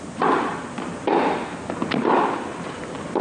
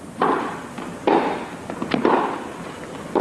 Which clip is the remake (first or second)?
second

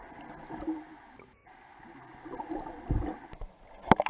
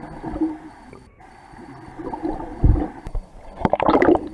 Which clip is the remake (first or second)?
second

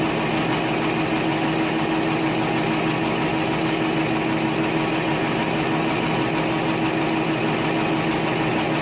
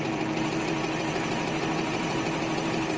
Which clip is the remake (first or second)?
second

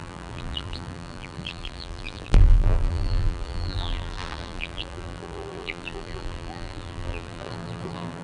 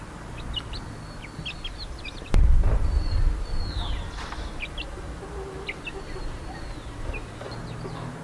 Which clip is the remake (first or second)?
first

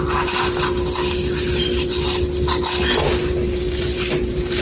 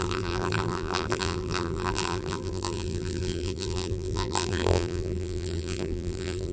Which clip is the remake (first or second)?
second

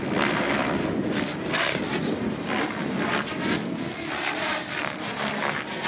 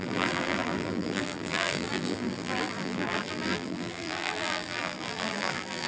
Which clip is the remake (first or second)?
second